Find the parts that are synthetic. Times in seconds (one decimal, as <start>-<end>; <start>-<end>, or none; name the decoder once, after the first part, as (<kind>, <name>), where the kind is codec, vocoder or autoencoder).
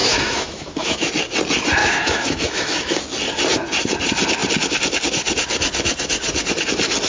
0.0-1.1 (autoencoder, DAC-VAE); 1.8-3.0